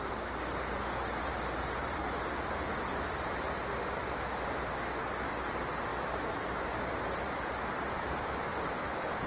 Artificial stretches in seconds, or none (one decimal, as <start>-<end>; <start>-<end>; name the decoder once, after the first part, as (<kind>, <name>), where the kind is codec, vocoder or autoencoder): 2.0-4.2 (vocoder, BigVGAN v2); 5.9-8.7